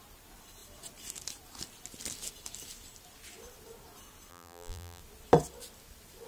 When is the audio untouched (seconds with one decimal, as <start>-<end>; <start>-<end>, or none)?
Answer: 0.0-4.3; 5.0-6.3